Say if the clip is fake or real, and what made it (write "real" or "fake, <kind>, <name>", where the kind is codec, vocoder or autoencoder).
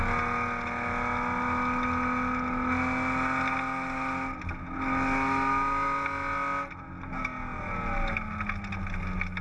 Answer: real